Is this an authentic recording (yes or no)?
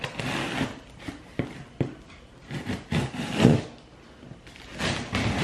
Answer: yes